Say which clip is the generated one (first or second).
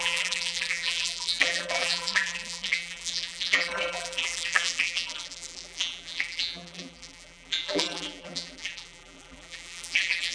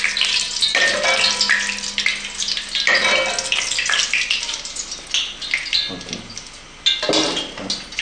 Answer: first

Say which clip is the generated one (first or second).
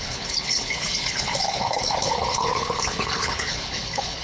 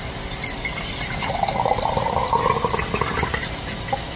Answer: first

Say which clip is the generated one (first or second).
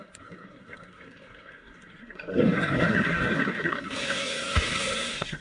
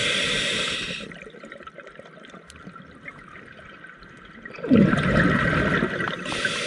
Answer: first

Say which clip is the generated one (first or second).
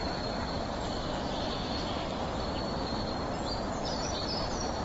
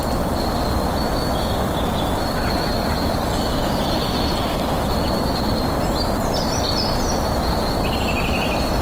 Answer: first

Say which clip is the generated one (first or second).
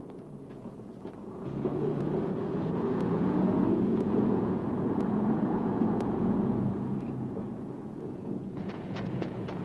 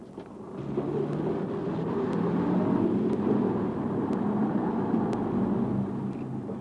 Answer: first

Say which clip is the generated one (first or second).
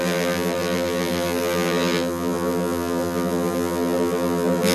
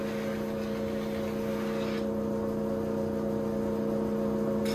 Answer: first